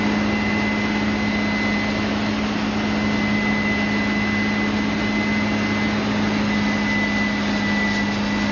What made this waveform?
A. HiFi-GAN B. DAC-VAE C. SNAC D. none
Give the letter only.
D